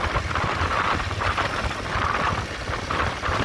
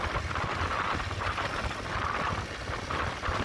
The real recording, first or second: second